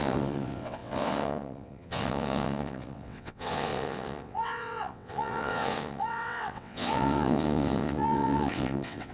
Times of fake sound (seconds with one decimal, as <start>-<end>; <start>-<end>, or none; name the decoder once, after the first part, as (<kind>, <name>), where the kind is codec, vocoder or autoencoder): 0.0-9.1 (vocoder, WaveNeXt)